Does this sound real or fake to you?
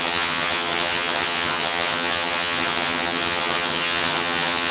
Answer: fake